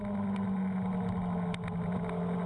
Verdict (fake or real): real